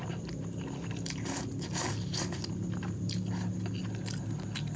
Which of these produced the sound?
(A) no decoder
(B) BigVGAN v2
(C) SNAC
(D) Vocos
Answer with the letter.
A